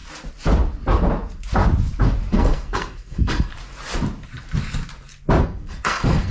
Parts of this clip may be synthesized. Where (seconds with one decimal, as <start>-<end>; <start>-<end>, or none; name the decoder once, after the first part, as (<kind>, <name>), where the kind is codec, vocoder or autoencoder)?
2.3-3.5 (codec, SNAC); 5.4-6.3